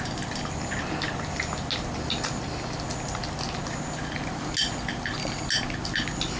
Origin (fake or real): real